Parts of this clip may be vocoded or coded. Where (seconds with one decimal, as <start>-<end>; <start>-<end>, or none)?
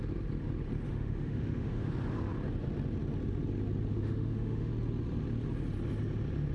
0.9-1.9; 3.9-4.7